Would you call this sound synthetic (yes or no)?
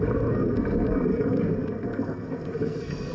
yes